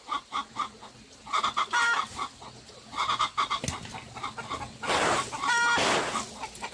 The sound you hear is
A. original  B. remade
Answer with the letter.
A